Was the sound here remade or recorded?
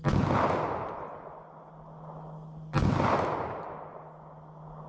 recorded